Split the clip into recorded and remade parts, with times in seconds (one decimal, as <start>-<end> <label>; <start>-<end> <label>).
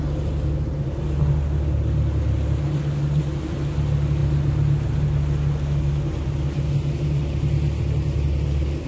0.0-8.9 recorded